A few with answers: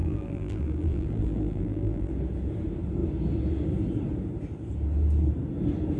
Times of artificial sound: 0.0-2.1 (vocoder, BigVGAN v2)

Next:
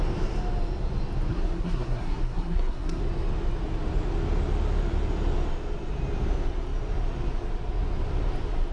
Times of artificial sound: 1.3-3.0 (codec, SNAC)

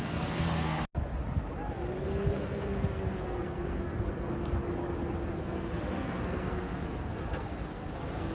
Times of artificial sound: 0.0-0.8 (codec, SNAC); 2.0-4.6; 5.3-8.3

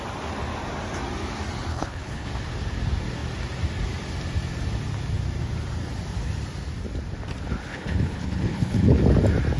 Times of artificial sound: 1.7-2.3 (codec, HILCodec); 7.7-9.0

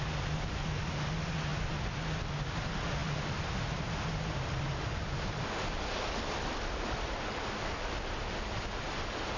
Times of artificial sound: none

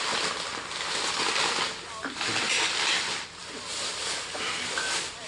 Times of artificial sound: none

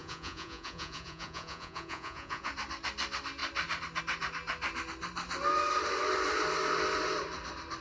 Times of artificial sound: 0.0-2.5 (vocoder, Vocos)

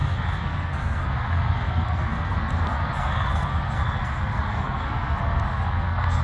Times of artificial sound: 0.0-6.2 (codec, SNAC)